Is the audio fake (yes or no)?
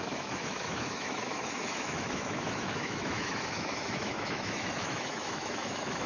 yes